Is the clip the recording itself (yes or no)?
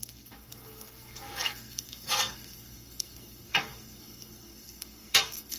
no